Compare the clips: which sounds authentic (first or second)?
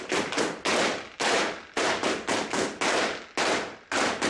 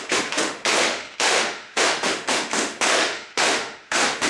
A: first